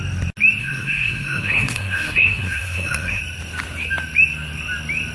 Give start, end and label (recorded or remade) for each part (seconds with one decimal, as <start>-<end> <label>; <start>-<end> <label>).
0.0-0.6 recorded; 0.6-3.2 remade; 3.2-5.1 recorded